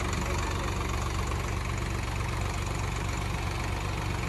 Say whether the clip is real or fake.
real